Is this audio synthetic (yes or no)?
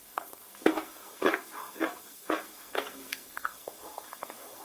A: yes